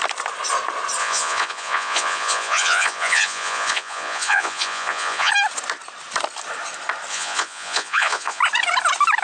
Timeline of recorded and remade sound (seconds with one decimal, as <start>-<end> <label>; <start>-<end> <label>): 0.0-1.0 recorded; 1.0-5.3 remade; 5.3-7.1 recorded; 7.1-8.4 remade; 8.4-9.2 recorded